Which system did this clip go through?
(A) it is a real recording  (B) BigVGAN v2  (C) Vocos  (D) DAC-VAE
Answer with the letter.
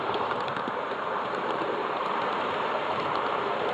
B